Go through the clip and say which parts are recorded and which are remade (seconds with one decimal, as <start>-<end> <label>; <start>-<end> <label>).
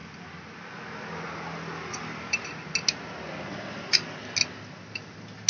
0.0-5.5 recorded